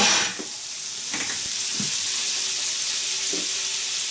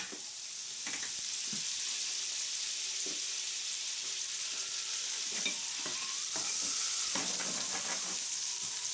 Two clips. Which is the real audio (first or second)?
first